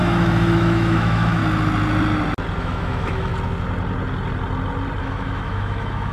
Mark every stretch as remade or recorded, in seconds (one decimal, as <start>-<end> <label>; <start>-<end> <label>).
0.0-1.4 remade; 1.4-2.6 recorded; 2.6-3.3 remade; 3.3-5.0 recorded; 5.0-6.1 remade